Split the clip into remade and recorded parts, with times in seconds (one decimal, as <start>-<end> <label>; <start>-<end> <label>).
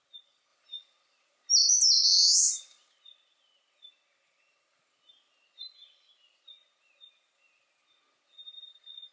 0.0-9.1 recorded